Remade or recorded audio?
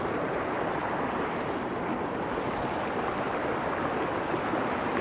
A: recorded